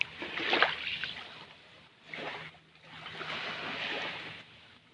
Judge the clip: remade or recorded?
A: recorded